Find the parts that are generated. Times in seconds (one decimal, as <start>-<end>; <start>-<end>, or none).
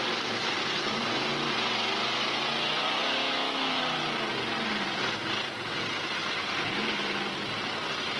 3.2-3.8